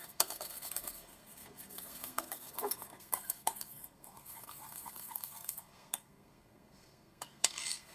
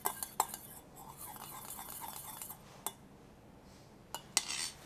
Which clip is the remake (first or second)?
first